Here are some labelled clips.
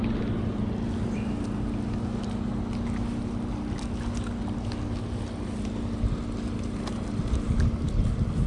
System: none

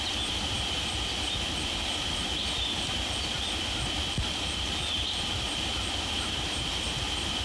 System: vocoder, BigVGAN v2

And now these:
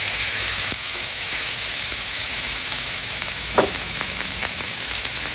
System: autoencoder, DAC-VAE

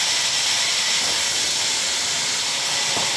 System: none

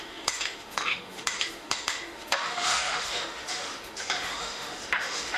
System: autoencoder, DAC-VAE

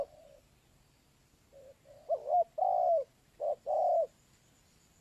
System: none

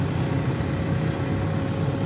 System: none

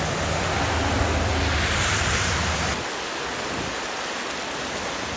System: none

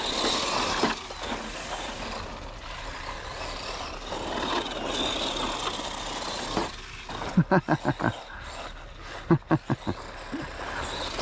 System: none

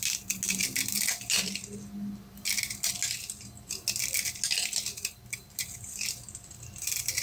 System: none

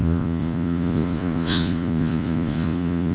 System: vocoder, Vocos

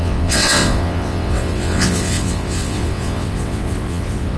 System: vocoder, WaveNeXt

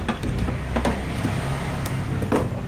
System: none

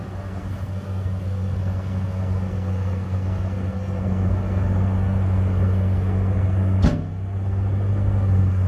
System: codec, SNAC